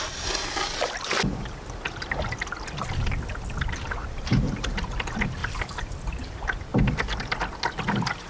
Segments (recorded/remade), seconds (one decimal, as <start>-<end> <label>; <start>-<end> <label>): 0.0-4.0 recorded; 4.0-5.0 remade; 5.0-5.4 recorded; 5.4-5.9 remade; 5.9-8.3 recorded